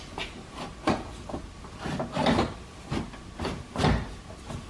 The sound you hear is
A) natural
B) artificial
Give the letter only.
A